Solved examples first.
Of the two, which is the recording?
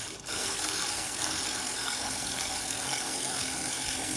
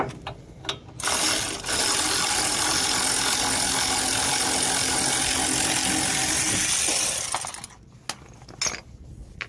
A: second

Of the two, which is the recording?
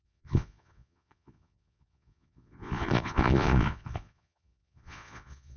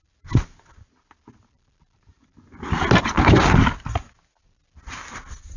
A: second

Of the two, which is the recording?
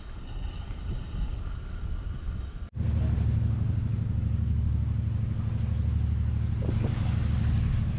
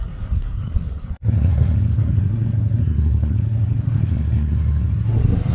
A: first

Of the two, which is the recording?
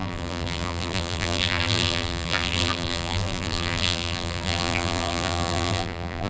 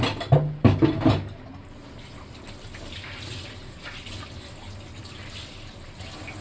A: second